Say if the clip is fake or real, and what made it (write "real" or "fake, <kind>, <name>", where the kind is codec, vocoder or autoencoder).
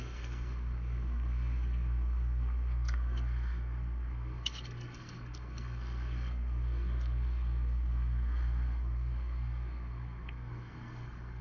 fake, codec, SNAC